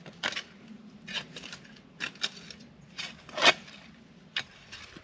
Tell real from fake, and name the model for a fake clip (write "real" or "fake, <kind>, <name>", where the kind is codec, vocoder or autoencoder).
real